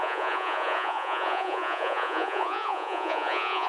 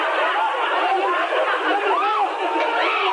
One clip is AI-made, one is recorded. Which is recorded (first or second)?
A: second